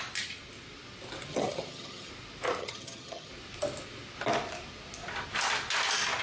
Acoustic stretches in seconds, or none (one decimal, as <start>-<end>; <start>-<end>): 0.0-1.3; 2.1-2.6; 3.3-6.2